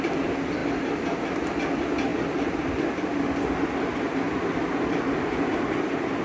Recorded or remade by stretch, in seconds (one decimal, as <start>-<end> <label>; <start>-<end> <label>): 0.0-6.2 recorded